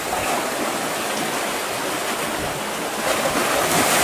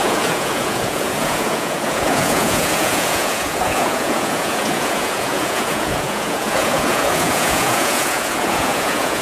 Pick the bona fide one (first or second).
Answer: first